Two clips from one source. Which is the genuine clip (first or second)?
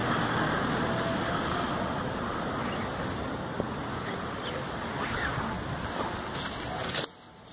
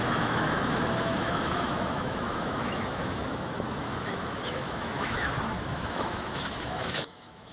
first